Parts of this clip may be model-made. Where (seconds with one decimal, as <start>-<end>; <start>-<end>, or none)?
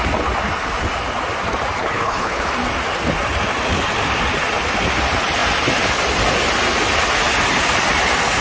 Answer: 1.8-2.5